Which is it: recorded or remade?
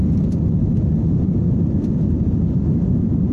recorded